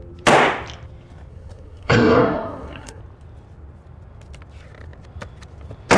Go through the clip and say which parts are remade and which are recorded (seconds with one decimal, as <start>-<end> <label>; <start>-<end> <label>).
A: 0.0-1.3 recorded; 1.3-3.0 remade; 3.0-6.0 recorded